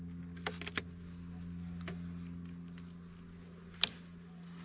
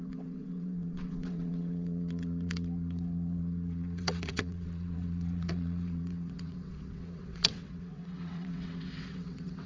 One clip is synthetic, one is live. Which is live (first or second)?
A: first